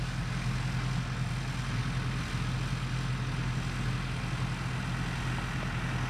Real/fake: real